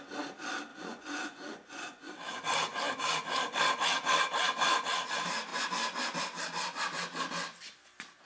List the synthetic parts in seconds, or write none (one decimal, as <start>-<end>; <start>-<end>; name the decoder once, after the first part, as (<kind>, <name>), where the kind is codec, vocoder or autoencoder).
0.7-2.1 (vocoder, Vocos)